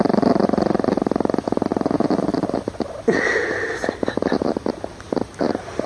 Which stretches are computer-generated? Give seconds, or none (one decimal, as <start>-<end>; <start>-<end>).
none